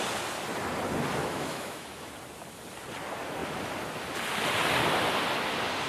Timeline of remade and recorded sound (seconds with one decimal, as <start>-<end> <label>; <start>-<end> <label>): 0.0-1.2 recorded; 1.2-2.1 remade; 2.1-5.9 recorded